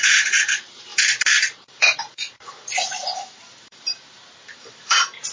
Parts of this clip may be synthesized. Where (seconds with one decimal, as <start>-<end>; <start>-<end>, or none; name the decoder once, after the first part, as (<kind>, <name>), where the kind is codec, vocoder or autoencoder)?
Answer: 0.0-5.3 (vocoder, BigVGAN v2)